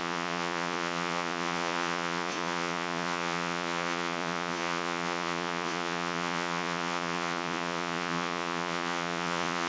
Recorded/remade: remade